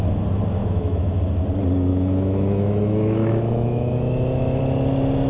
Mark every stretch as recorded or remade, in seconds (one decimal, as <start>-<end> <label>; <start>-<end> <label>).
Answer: 0.0-0.6 recorded; 0.6-1.2 remade; 1.2-1.9 recorded; 1.9-4.6 remade; 4.6-5.3 recorded